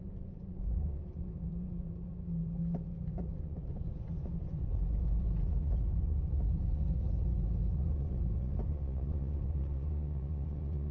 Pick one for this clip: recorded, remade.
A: remade